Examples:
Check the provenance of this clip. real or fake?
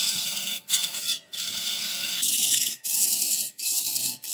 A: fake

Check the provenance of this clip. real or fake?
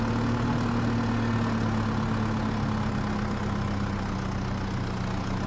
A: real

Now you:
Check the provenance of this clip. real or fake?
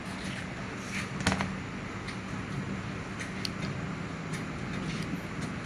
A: real